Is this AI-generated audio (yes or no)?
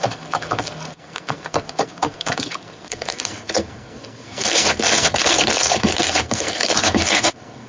yes